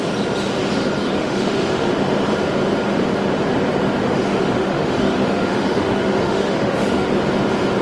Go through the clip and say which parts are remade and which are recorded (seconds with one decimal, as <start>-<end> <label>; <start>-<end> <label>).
0.0-1.0 recorded; 1.0-1.9 remade; 1.9-4.0 recorded; 4.0-7.1 remade; 7.1-7.8 recorded